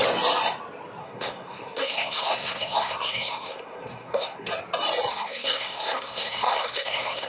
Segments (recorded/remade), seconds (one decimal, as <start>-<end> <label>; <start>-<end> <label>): 0.0-1.0 recorded; 1.0-4.5 remade; 4.5-5.1 recorded; 5.1-7.3 remade